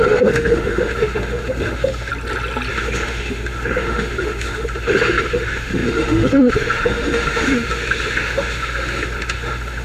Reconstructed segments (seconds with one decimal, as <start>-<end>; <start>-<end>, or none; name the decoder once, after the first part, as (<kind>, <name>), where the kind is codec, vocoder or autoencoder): 0.0-2.1 (autoencoder, DAC-VAE); 2.7-9.8